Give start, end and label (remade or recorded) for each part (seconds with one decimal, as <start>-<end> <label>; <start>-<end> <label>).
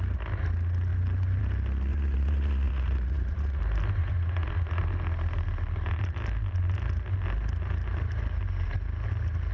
0.0-1.9 recorded; 1.9-3.6 remade; 3.6-4.0 recorded; 4.0-4.8 remade; 4.8-9.5 recorded